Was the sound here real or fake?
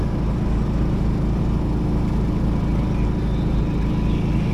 real